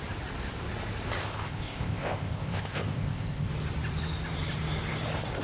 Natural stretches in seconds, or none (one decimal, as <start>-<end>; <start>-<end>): 0.0-1.2; 3.5-5.4